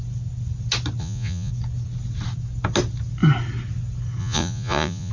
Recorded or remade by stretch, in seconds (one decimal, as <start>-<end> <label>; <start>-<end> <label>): 0.0-1.0 recorded; 1.0-1.5 remade; 1.5-4.2 recorded; 4.2-5.1 remade